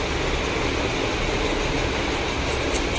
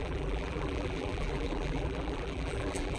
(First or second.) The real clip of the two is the first